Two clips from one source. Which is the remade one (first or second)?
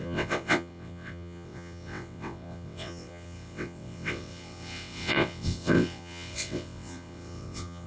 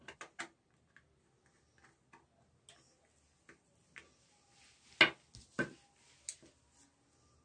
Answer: first